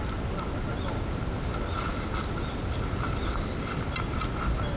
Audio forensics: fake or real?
real